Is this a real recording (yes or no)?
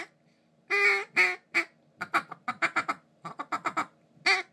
yes